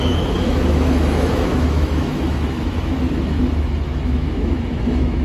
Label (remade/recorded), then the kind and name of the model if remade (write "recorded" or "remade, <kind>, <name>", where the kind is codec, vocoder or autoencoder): remade, autoencoder, DAC-VAE